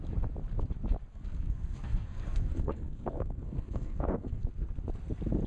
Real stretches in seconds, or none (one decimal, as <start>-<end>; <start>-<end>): 0.0-1.1; 4.4-5.5